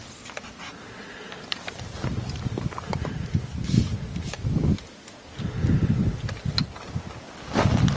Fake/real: real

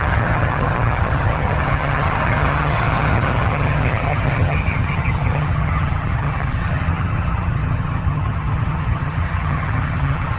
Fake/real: fake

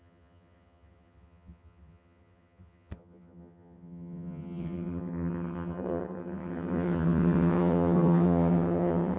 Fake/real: fake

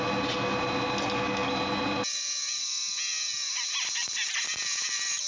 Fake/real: real